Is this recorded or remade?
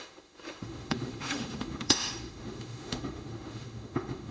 remade